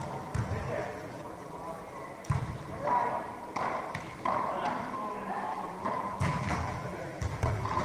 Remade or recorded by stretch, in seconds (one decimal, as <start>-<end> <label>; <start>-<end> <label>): 0.0-0.8 recorded; 0.8-1.8 remade; 1.8-5.5 recorded; 5.5-7.8 remade